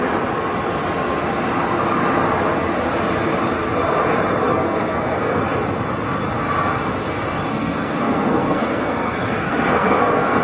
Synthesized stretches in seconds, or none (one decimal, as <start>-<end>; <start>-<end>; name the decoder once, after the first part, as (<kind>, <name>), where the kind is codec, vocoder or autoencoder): 4.5-5.4 (codec, SNAC); 7.5-10.4